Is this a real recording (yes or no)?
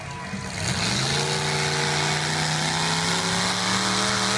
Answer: yes